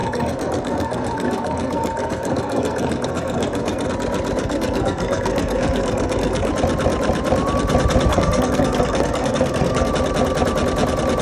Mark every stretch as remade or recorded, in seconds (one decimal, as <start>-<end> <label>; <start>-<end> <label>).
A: 0.0-3.9 remade; 3.9-4.4 recorded; 4.4-6.5 remade; 6.5-8.1 recorded; 8.1-9.9 remade; 9.9-11.2 recorded